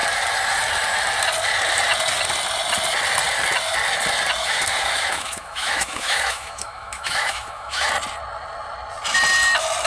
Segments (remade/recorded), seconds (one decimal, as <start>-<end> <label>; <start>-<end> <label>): 0.0-4.4 recorded; 4.4-7.9 remade; 7.9-9.9 recorded